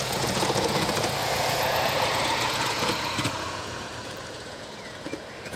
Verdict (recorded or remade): remade